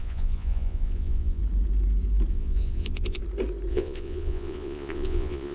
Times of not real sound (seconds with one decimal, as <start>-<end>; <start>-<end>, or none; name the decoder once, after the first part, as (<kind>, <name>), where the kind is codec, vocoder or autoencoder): 0.0-1.4 (vocoder, Vocos); 2.3-3.2; 3.7-5.5